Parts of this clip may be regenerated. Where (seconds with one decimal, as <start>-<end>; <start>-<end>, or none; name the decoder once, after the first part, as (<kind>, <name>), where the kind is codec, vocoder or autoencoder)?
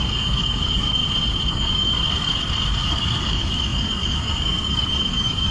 0.0-1.0 (codec, DAC); 1.5-2.3; 2.8-5.5